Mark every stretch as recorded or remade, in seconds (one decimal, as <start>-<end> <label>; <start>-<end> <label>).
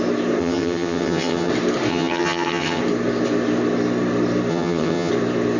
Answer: 0.0-0.4 recorded; 0.4-1.5 remade; 1.5-1.9 recorded; 1.9-2.8 remade; 2.8-4.5 recorded; 4.5-5.1 remade; 5.1-5.6 recorded